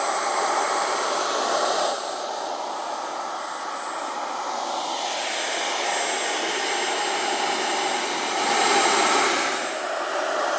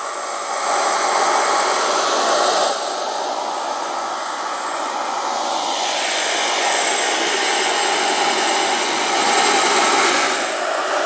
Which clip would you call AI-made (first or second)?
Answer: second